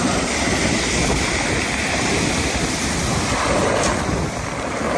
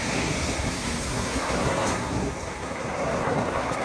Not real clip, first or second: second